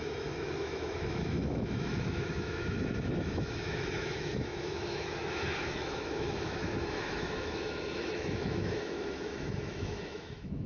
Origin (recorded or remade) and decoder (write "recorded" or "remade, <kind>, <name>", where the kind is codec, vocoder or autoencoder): remade, autoencoder, DAC-VAE